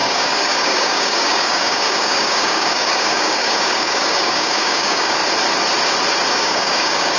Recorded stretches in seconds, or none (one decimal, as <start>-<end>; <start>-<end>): 5.2-6.3